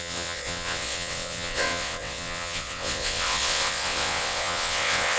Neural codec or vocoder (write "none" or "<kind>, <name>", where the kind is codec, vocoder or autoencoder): vocoder, WaveNeXt